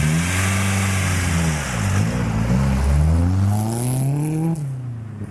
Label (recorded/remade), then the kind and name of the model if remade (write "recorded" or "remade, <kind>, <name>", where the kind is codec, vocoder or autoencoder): recorded